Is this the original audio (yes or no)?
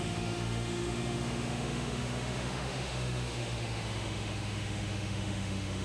no